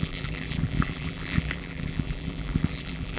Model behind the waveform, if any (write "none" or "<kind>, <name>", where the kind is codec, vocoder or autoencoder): vocoder, BigVGAN v2